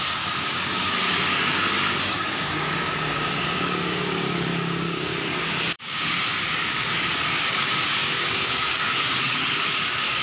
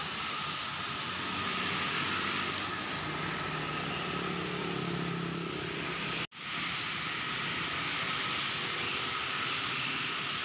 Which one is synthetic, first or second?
first